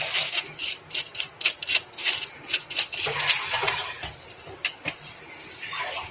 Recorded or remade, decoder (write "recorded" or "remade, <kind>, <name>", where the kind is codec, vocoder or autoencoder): recorded